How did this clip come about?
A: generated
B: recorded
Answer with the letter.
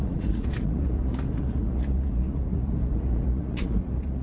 A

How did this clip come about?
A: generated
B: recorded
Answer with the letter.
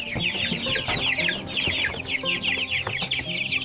B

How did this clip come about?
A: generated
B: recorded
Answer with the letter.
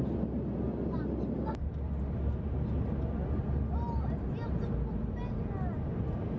B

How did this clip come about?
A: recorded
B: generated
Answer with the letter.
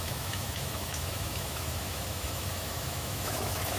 B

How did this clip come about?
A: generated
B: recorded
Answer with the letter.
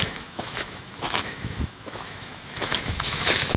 A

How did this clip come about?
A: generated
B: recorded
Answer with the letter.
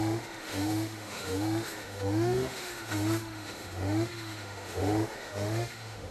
A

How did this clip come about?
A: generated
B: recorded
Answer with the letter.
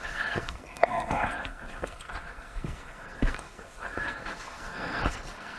A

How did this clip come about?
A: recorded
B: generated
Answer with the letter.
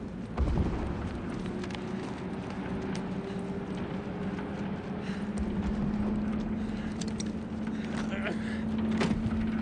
A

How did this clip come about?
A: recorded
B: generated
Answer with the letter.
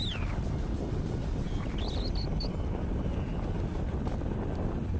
A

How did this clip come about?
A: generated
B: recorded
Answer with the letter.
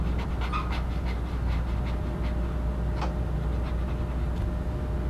B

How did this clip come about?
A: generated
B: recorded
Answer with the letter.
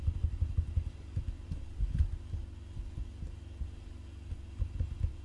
B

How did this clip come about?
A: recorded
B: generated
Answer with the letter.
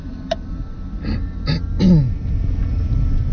A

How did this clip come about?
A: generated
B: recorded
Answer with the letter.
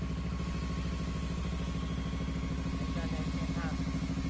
B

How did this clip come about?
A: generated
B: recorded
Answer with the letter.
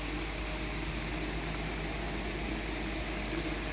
B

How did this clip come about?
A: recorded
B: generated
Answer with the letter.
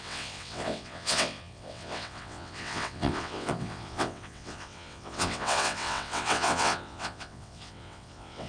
B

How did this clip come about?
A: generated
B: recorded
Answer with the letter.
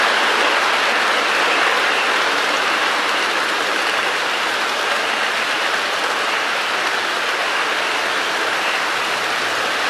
B